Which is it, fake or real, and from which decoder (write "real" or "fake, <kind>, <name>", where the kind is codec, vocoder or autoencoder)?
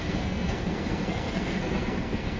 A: fake, codec, SNAC